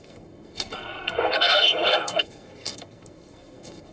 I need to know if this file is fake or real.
fake